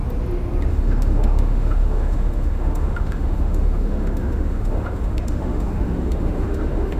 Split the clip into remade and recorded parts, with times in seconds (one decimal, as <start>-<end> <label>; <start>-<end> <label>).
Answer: 0.0-0.7 recorded; 0.7-7.0 remade